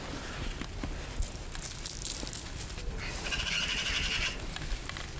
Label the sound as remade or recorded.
recorded